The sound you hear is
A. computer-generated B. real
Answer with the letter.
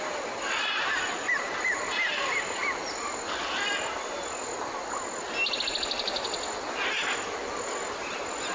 B